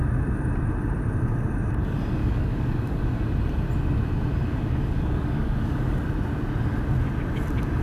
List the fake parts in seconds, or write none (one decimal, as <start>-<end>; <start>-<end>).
2.2-3.0; 4.5-6.0